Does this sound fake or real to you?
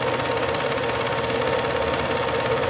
real